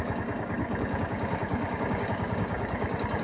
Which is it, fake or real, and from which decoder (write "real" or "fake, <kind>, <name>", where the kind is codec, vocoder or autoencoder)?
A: fake, codec, DAC